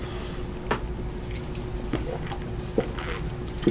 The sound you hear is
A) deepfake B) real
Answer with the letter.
B